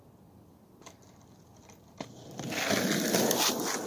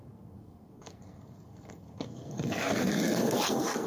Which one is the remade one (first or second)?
second